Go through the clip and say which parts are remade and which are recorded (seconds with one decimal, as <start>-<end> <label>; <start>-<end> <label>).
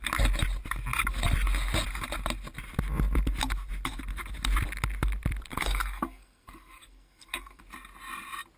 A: 0.0-5.5 recorded; 5.5-7.6 remade; 7.6-8.6 recorded